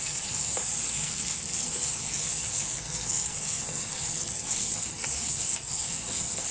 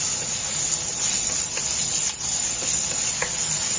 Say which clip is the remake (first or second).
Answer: first